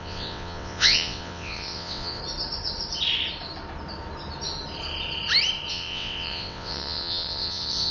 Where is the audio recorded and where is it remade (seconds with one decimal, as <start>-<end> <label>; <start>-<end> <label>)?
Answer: 0.0-2.2 remade; 2.2-5.7 recorded; 5.7-7.9 remade